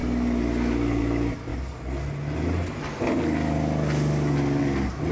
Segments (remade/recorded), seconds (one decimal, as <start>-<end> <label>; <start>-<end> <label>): 0.0-5.1 recorded